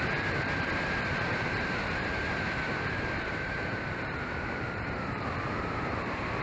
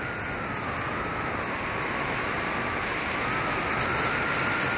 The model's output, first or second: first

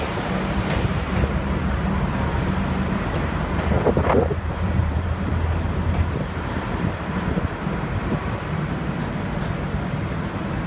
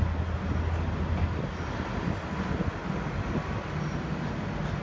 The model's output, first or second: first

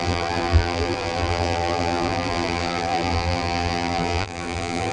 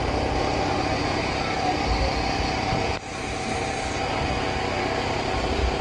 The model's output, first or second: first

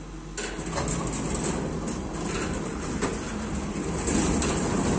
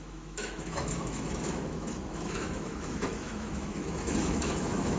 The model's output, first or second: second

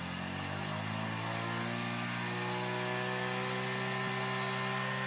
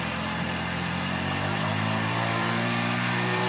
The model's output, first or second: second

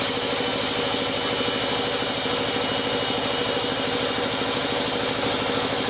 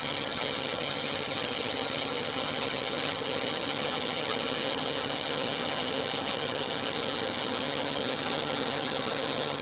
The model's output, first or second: second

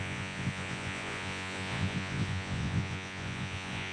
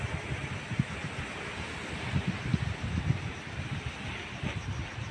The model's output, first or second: first